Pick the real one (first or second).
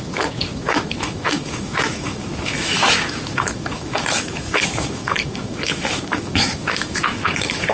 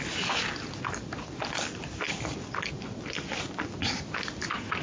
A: second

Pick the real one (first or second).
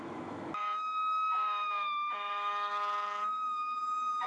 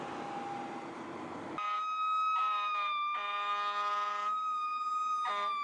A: second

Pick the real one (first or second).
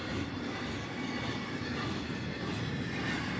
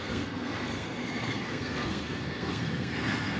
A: first